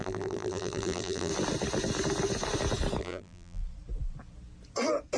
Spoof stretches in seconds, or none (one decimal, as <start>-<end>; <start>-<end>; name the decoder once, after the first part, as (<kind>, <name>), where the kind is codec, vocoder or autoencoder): 0.0-1.3 (vocoder, BigVGAN v2); 3.0-3.6